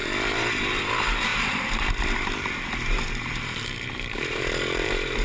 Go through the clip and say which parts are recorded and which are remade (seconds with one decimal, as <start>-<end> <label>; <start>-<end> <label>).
0.0-5.2 remade

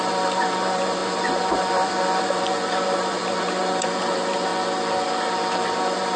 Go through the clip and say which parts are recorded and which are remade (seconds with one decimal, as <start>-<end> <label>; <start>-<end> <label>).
0.0-4.5 remade; 4.5-5.6 recorded; 5.6-6.2 remade

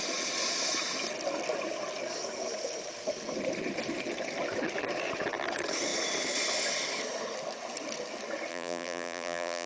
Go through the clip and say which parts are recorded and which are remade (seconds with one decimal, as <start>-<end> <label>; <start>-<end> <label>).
0.0-8.5 recorded; 8.5-9.7 remade